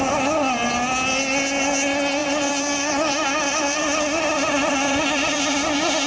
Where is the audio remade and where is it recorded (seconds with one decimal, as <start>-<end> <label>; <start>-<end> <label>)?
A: 0.0-2.2 recorded; 2.2-6.1 remade